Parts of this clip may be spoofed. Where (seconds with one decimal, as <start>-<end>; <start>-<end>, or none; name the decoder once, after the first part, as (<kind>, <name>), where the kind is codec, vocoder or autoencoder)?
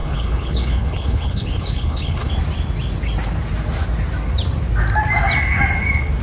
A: 0.0-2.3 (codec, HILCodec)